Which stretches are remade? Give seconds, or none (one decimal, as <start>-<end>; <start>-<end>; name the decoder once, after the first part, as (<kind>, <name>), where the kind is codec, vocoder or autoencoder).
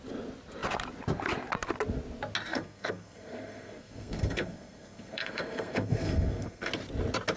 2.5-6.7 (codec, SNAC)